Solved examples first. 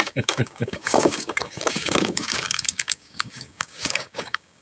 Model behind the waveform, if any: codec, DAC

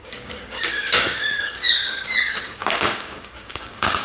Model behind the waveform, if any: codec, DAC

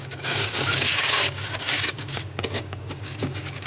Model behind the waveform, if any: codec, DAC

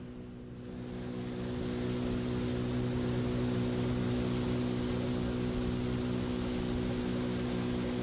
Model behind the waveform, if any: none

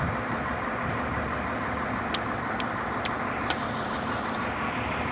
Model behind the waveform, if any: none